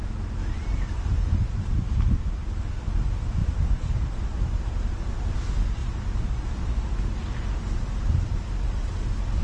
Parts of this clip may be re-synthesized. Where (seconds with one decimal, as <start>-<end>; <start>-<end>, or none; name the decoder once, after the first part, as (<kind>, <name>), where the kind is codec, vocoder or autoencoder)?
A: 0.4-2.2 (vocoder, BigVGAN v2); 3.4-3.9; 4.3-4.9